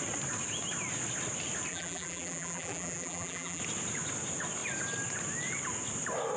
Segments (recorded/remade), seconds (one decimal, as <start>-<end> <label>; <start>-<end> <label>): 0.0-1.7 recorded; 1.7-3.6 remade; 3.6-6.4 recorded